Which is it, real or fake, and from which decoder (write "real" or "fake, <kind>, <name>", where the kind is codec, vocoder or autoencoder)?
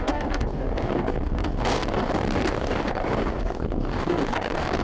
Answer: fake, codec, DAC